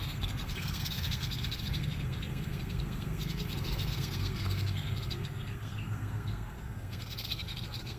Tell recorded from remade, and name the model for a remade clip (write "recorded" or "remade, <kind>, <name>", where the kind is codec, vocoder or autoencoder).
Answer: remade, codec, SNAC